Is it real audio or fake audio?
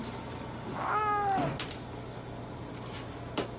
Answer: real